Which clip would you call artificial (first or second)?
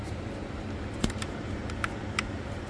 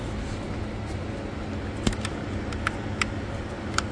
first